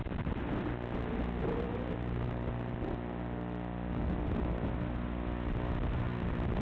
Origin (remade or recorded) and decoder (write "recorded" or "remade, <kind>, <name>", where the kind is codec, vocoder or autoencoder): recorded